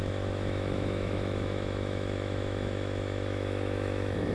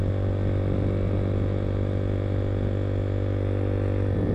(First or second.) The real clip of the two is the second